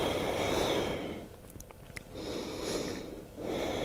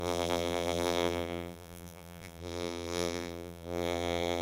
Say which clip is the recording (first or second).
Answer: first